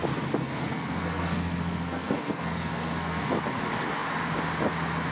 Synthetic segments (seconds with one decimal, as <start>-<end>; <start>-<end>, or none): 0.4-3.3